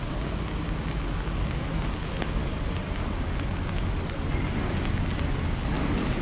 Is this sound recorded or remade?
recorded